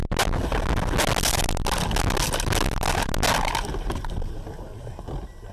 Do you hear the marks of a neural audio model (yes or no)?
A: no